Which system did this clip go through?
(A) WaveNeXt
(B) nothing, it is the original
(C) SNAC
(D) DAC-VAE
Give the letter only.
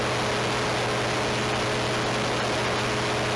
B